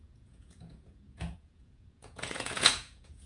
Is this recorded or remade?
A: remade